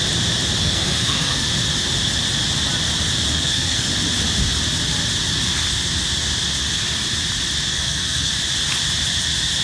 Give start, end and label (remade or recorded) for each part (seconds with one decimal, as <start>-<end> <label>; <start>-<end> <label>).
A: 0.0-0.6 recorded; 0.6-1.5 remade; 1.5-3.3 recorded; 3.3-3.9 remade; 3.9-7.7 recorded; 7.7-8.3 remade; 8.3-9.6 recorded